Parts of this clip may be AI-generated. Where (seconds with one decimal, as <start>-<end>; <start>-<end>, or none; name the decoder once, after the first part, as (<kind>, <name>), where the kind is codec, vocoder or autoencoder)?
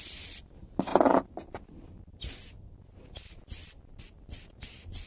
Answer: none